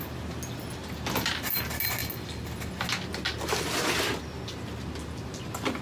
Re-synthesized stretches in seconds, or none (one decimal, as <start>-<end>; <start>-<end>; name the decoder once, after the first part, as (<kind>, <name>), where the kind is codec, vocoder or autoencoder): none